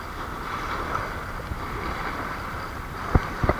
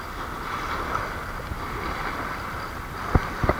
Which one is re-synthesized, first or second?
first